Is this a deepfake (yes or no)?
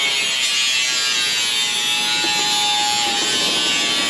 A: no